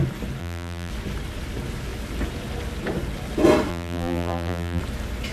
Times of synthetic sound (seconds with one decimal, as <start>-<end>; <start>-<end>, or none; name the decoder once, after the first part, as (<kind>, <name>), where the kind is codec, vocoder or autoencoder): 0.4-0.9 (vocoder, BigVGAN v2); 3.7-4.8